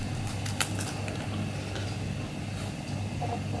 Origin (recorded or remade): recorded